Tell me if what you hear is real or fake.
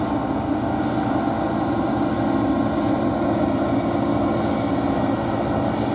real